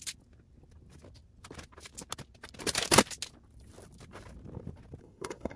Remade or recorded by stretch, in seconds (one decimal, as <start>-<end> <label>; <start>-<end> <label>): 0.0-5.0 recorded; 5.0-5.6 remade